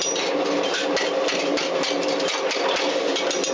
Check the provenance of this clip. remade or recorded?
recorded